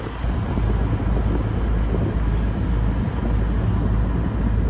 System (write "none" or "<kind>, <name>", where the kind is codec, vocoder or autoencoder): none